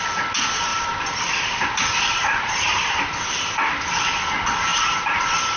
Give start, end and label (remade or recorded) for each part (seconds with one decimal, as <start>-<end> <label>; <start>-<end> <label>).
0.0-0.7 recorded; 0.7-3.3 remade; 3.3-4.7 recorded; 4.7-5.6 remade